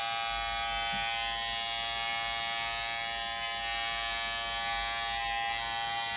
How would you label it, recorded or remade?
recorded